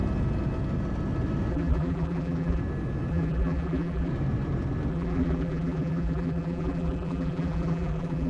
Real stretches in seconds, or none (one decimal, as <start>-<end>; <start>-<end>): 0.0-1.5; 2.6-3.1; 4.1-4.9

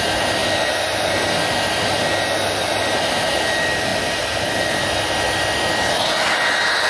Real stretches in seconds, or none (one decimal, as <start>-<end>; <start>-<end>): 0.0-6.9

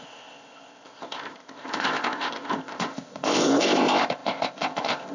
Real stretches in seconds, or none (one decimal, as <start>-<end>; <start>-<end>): none